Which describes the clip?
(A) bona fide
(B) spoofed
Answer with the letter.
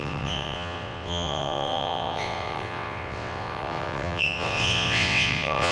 B